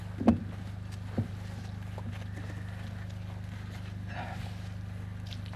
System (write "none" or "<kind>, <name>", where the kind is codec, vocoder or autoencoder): none